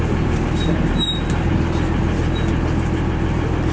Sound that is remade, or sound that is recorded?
recorded